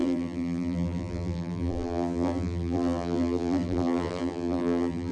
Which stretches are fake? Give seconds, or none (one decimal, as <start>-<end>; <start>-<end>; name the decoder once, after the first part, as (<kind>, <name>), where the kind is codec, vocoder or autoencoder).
0.0-5.1 (vocoder, BigVGAN v2)